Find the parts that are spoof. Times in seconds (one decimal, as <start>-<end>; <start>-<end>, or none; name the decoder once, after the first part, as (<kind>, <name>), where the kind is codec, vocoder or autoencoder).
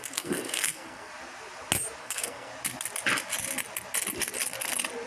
0.0-1.1 (codec, SNAC); 2.0-2.5